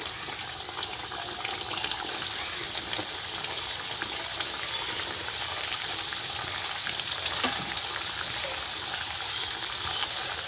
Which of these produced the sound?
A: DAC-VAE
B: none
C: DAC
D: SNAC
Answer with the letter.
B